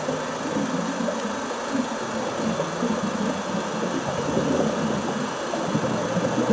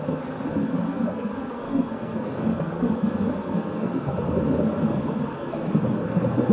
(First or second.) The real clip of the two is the first